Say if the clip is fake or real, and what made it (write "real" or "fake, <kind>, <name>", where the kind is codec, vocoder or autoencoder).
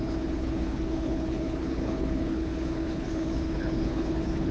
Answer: fake, codec, HILCodec